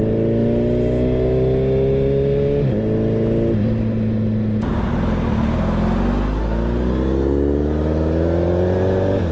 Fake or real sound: real